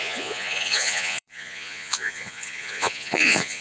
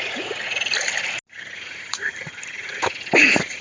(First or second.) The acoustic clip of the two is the second